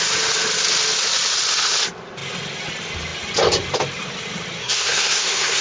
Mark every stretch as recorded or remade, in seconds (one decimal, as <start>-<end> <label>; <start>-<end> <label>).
0.0-4.6 recorded; 4.6-5.6 remade